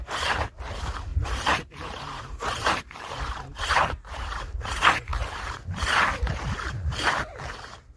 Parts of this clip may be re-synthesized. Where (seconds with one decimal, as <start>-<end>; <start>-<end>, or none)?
1.1-2.8

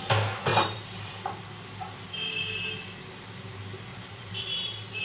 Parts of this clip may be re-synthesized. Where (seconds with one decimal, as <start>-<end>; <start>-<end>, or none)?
0.5-1.3; 3.9-5.0

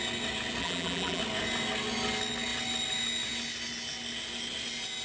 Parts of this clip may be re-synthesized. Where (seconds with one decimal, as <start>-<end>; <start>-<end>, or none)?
0.6-1.2

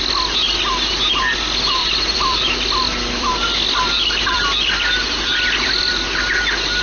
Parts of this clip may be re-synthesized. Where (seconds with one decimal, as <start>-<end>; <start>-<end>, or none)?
1.8-5.9